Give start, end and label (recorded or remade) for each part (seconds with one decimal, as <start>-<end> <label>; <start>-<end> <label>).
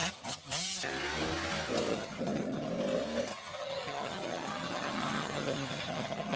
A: 0.0-0.9 remade; 0.9-1.9 recorded; 1.9-2.7 remade; 2.7-3.3 recorded; 3.3-6.4 remade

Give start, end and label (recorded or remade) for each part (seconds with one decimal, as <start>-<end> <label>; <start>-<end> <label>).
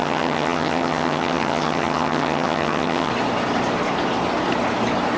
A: 0.0-3.1 remade; 3.1-5.2 recorded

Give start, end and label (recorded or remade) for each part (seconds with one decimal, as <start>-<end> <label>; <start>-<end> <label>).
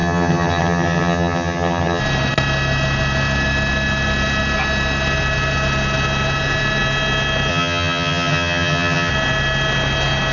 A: 0.0-2.0 remade; 2.0-7.5 recorded; 7.5-9.1 remade; 9.1-10.3 recorded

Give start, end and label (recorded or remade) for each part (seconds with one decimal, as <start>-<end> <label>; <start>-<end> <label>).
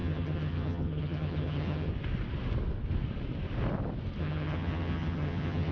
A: 0.0-1.9 remade; 1.9-4.2 recorded; 4.2-5.7 remade